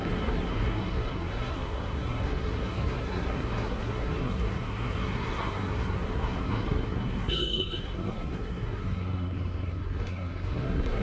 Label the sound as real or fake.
fake